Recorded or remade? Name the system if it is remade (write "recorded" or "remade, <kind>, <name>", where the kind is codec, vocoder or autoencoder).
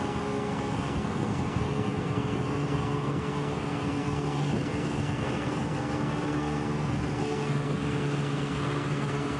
remade, codec, SNAC